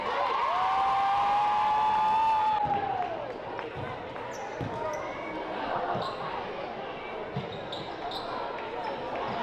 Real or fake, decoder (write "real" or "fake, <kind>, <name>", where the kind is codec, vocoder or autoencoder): real